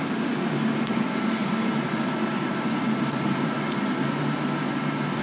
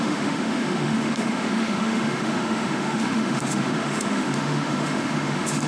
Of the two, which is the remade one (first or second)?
second